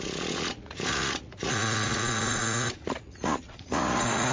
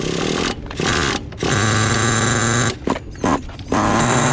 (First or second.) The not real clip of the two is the first